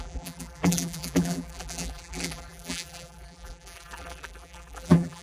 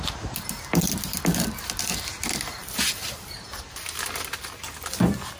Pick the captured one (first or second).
second